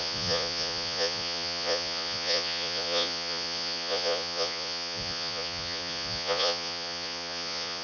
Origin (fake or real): fake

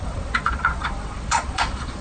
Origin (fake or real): fake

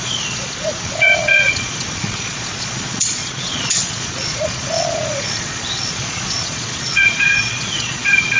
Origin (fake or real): fake